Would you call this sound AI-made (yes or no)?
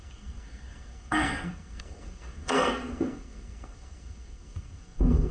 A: yes